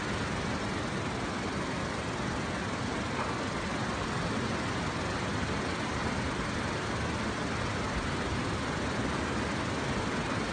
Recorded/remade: recorded